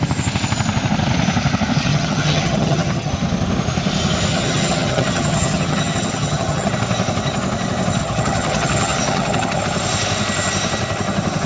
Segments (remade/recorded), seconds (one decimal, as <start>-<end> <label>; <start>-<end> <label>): 0.0-1.9 recorded; 1.9-3.1 remade; 3.1-4.3 recorded; 4.3-6.7 remade; 6.7-8.0 recorded; 8.0-9.6 remade; 9.6-11.5 recorded